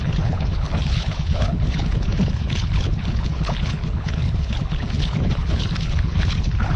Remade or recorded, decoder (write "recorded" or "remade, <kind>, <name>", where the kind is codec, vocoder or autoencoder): remade, codec, HILCodec